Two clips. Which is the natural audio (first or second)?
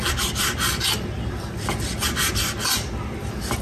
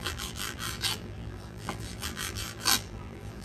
first